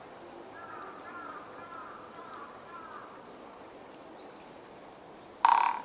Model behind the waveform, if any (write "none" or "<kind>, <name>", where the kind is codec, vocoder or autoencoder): none